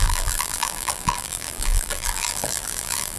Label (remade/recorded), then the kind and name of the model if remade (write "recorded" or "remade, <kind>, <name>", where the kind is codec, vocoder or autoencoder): remade, vocoder, BigVGAN v2